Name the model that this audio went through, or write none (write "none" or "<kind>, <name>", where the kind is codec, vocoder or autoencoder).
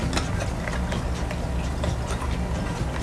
none